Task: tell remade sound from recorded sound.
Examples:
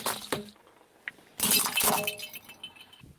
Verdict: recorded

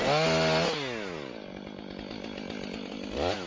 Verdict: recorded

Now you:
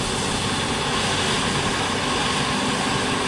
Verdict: recorded